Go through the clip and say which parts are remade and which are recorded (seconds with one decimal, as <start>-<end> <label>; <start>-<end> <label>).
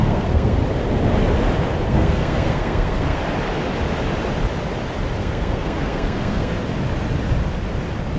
0.0-0.6 remade; 0.6-1.9 recorded; 1.9-3.2 remade; 3.2-5.2 recorded; 5.2-6.5 remade; 6.5-8.2 recorded